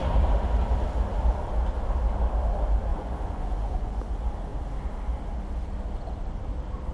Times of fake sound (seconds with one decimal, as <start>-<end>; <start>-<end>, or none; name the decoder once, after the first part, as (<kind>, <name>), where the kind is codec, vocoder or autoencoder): 2.9-4.1 (vocoder, Vocos)